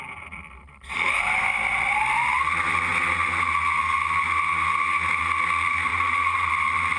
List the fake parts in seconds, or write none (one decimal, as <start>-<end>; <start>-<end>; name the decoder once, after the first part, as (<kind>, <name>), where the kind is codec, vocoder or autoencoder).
0.6-1.1 (vocoder, Vocos); 5.9-6.5

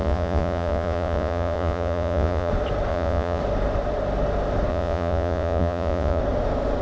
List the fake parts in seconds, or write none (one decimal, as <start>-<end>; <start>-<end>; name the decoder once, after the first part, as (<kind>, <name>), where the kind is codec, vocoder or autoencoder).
0.0-2.5 (vocoder, Vocos); 2.9-3.4; 4.7-6.2

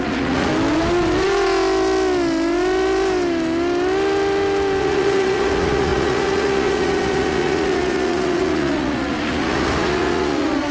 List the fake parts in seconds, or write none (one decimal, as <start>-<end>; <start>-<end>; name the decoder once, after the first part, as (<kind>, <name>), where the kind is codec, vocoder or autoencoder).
0.0-0.5 (vocoder, Vocos); 4.8-10.7

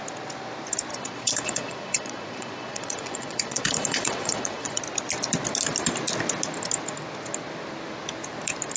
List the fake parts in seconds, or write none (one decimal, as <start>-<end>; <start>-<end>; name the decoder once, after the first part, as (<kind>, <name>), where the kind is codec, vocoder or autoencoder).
0.9-4.8 (vocoder, Vocos)

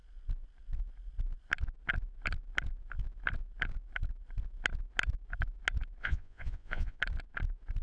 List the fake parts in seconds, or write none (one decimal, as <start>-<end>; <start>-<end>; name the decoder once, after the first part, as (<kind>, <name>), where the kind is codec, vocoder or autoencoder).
6.0-7.0 (vocoder, Vocos)

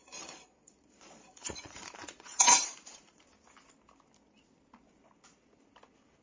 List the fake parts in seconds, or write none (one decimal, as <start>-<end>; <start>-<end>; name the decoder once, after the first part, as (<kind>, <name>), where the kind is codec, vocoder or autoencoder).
0.0-3.3 (vocoder, Vocos)